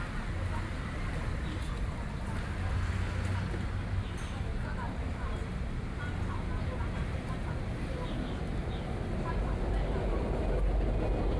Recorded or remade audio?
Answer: recorded